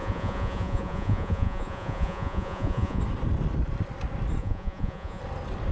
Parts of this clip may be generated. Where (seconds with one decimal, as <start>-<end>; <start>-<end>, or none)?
0.0-3.0; 4.4-5.2